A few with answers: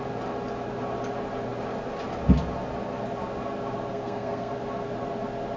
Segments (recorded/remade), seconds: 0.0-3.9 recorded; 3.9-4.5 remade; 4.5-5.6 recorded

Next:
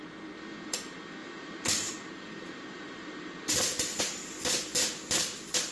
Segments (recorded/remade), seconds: 0.0-1.2 recorded; 1.2-4.0 remade; 4.0-5.7 recorded

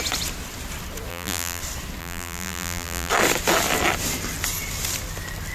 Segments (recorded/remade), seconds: 0.0-1.1 recorded; 1.1-1.6 remade; 1.6-2.0 recorded; 2.0-3.1 remade; 3.1-5.5 recorded

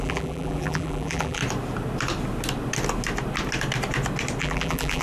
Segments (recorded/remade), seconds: 0.0-1.4 remade; 1.4-4.4 recorded; 4.4-5.0 remade

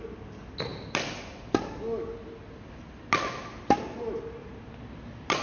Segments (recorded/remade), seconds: 0.0-5.4 recorded

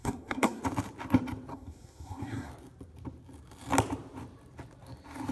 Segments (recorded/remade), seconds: 0.0-0.6 remade; 0.6-1.5 recorded; 1.5-2.5 remade; 2.5-5.3 recorded